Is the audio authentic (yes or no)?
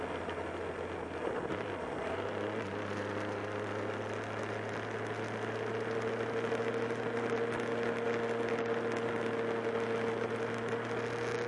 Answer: yes